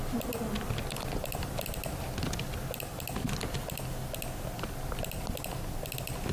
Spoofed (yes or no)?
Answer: no